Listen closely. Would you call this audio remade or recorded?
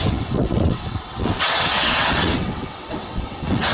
remade